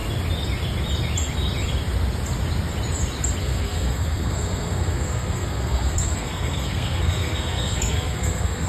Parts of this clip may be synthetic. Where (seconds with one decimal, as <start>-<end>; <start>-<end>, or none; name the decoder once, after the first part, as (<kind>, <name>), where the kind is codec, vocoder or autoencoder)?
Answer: 3.4-8.7 (codec, SNAC)